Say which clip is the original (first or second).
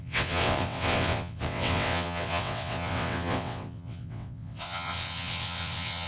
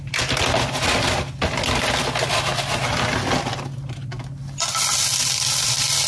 second